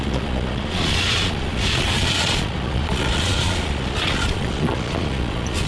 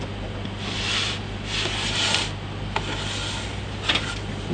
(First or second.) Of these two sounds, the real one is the second